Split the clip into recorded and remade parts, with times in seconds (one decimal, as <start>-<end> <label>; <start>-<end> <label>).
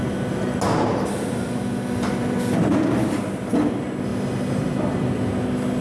0.0-5.8 recorded